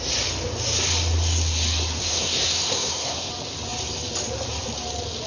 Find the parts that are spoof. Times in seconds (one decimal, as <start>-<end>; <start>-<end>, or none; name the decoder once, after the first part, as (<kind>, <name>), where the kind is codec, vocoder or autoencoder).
2.0-3.3 (codec, SNAC)